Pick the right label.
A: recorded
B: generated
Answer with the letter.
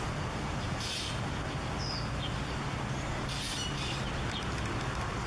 A